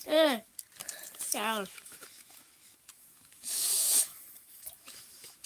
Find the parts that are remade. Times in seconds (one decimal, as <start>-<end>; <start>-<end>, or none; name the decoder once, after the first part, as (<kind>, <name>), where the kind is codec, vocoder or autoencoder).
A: 0.0-0.5 (autoencoder, DAC-VAE); 1.2-5.5